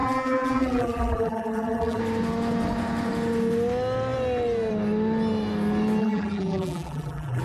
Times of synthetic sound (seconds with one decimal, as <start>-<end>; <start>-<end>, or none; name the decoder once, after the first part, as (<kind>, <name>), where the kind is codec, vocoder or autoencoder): 0.0-2.0 (vocoder, BigVGAN v2); 6.0-7.4